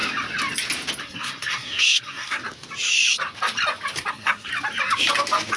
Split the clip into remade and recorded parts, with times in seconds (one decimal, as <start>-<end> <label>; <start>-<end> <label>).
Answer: 0.0-1.0 recorded; 1.0-2.4 remade; 2.4-4.1 recorded; 4.1-4.5 remade; 4.5-5.6 recorded